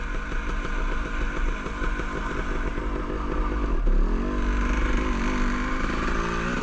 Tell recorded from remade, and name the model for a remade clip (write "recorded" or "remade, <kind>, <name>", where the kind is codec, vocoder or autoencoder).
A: recorded